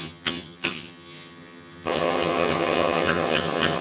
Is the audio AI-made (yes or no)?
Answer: yes